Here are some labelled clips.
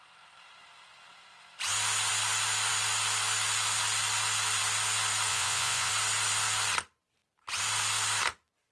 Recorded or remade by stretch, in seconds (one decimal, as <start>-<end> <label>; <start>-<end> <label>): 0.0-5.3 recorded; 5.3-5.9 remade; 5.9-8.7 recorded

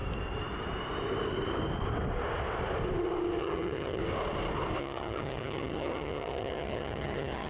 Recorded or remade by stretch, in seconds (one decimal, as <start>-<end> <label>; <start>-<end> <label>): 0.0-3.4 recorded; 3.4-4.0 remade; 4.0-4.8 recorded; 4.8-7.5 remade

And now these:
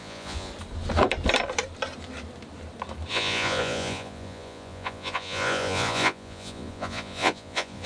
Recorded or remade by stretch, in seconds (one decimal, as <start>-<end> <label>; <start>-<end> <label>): 0.0-0.5 remade; 0.5-3.1 recorded; 3.1-7.9 remade